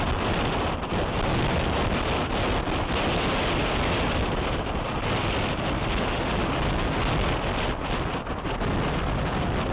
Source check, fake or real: real